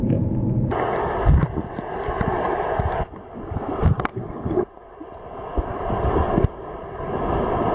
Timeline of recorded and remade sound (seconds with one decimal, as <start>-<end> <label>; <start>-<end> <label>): 0.0-7.7 recorded